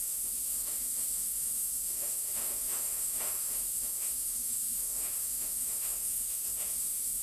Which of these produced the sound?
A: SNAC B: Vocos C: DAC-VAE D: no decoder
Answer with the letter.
C